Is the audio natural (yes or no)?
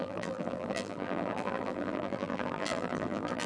no